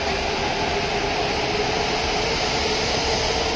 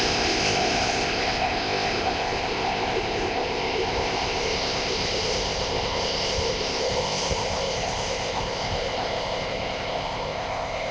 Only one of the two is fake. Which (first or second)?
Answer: second